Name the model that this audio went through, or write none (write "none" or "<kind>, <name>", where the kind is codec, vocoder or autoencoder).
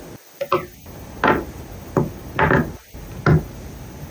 none